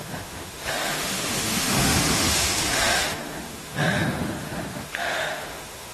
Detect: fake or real fake